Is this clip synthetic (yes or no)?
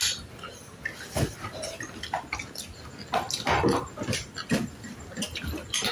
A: no